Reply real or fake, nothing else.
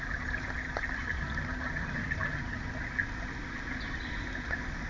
real